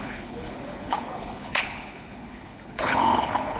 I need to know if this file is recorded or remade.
remade